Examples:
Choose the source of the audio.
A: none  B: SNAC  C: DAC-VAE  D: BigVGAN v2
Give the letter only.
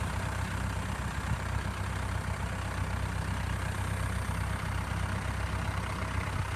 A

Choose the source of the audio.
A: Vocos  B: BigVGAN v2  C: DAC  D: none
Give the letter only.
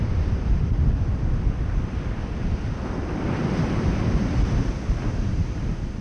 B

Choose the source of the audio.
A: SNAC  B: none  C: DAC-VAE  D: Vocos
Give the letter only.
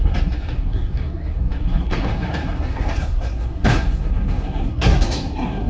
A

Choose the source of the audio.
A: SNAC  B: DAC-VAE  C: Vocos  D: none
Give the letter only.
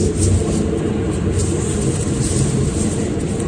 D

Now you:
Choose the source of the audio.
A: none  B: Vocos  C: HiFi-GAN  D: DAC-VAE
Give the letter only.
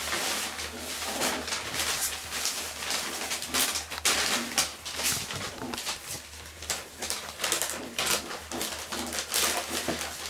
A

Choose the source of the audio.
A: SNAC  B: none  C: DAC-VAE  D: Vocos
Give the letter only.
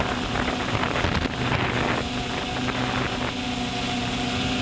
B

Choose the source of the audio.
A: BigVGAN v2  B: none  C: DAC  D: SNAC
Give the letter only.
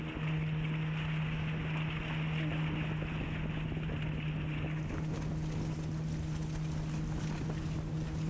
B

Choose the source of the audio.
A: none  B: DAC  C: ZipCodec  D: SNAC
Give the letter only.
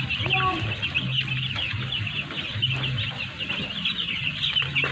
A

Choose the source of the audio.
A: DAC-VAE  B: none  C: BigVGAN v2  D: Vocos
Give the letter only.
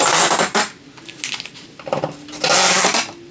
B